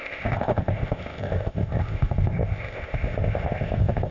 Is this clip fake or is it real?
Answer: fake